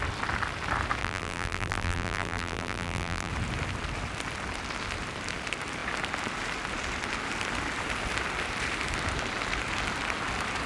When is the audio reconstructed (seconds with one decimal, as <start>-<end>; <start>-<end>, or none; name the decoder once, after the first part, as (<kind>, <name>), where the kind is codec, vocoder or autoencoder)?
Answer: 1.0-3.3 (vocoder, BigVGAN v2)